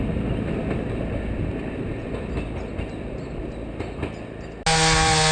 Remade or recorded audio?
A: recorded